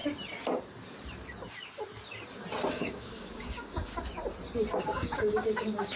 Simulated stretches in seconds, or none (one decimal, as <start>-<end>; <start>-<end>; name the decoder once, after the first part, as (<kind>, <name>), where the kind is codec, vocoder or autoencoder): 2.7-3.9 (codec, DAC); 4.8-6.0